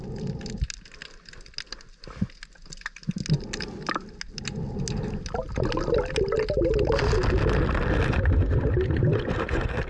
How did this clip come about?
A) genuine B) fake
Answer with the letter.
A